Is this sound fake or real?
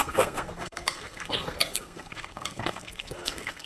fake